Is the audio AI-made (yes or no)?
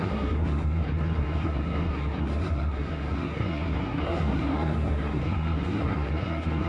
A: yes